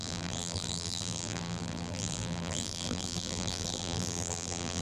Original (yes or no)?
no